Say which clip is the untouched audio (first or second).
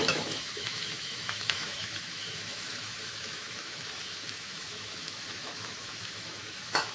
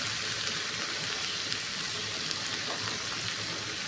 second